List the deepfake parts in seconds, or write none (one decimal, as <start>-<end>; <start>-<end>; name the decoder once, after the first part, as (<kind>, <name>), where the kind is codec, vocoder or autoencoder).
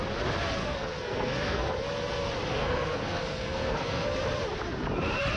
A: 0.6-1.7 (codec, SNAC); 2.5-4.2